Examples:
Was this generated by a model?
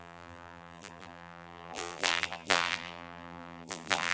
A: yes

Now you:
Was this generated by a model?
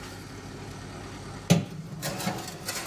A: no